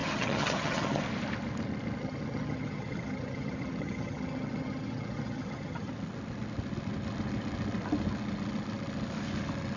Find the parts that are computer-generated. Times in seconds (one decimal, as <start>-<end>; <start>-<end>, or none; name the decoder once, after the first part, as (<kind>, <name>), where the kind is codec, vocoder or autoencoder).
0.0-1.0 (vocoder, HiFi-GAN); 2.0-5.9